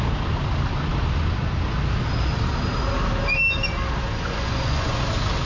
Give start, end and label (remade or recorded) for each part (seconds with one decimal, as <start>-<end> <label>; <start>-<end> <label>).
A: 0.0-4.1 recorded; 4.1-5.0 remade; 5.0-5.5 recorded